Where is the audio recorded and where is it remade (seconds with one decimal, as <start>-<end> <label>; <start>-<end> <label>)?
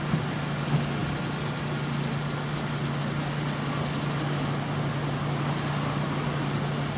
0.0-7.0 recorded